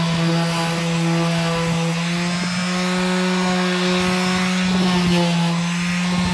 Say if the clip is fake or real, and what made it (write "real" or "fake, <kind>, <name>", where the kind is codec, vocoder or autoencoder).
real